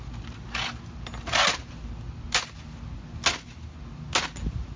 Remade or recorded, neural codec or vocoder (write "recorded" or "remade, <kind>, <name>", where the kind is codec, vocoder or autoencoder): recorded